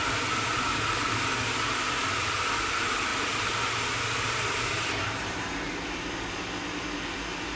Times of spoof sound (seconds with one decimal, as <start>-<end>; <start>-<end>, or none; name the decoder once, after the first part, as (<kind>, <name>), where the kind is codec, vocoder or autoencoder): none